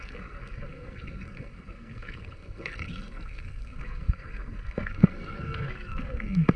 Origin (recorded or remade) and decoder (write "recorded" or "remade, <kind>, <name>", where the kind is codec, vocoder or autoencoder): remade, codec, SNAC